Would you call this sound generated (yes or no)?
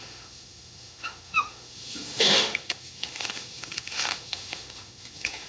yes